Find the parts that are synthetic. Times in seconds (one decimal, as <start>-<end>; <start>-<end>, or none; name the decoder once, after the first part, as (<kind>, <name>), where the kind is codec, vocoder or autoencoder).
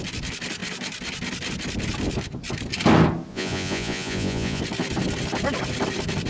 3.3-4.6 (vocoder, Vocos)